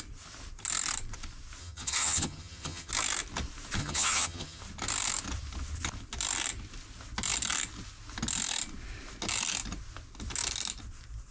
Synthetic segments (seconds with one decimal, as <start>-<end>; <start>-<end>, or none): 1.6-2.9; 3.8-4.6